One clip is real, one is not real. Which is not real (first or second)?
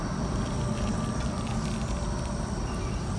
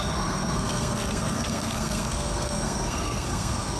second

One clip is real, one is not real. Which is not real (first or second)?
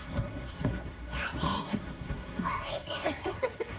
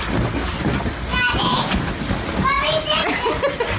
first